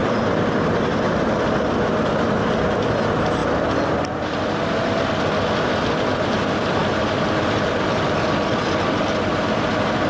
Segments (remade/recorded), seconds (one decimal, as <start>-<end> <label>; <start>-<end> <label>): 0.0-1.9 remade; 1.9-3.4 recorded; 3.4-5.8 remade; 5.8-6.8 recorded; 6.8-9.7 remade; 9.7-10.1 recorded